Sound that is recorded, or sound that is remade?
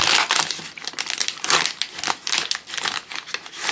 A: recorded